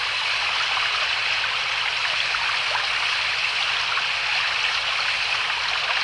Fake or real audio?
real